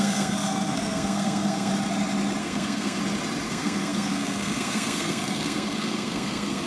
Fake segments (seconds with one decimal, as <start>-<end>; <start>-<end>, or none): 0.0-1.7; 2.4-3.0; 3.5-6.7